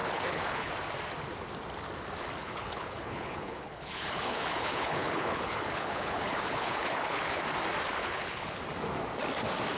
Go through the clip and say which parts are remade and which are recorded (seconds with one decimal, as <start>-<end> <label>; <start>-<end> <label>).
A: 0.0-0.7 remade; 0.7-2.4 recorded; 2.4-7.4 remade; 7.4-8.0 recorded; 8.0-8.6 remade; 8.6-9.8 recorded